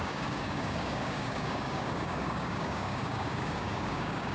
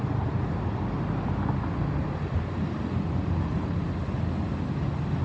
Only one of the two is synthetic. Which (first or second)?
first